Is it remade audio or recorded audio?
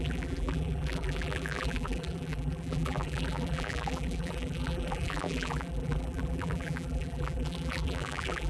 remade